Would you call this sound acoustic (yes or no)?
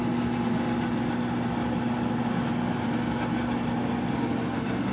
no